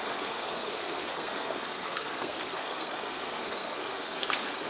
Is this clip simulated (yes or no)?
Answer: yes